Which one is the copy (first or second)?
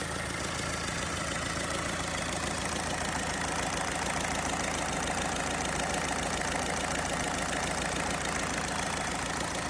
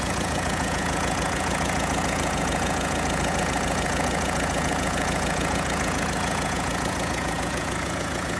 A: second